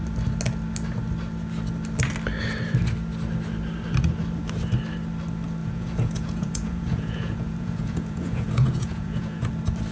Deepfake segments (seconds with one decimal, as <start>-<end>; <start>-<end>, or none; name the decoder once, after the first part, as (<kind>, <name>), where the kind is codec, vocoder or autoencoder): 5.6-9.5 (vocoder, Vocos)